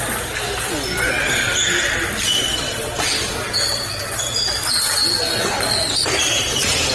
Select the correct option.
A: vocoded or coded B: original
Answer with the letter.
B